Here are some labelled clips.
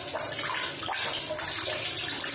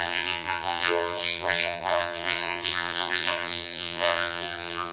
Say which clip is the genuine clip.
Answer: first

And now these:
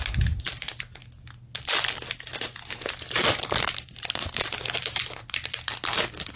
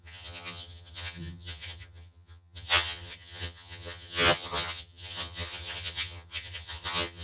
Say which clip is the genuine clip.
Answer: first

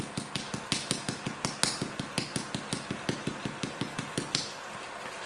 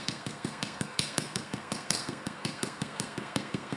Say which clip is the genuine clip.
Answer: first